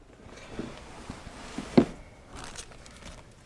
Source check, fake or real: real